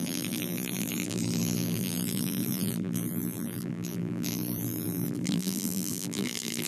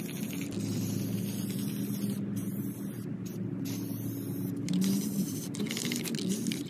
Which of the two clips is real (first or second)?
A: second